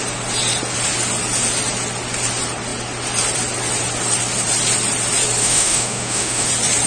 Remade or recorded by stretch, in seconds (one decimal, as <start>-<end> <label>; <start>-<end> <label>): 0.0-5.4 recorded; 5.4-6.5 remade; 6.5-6.9 recorded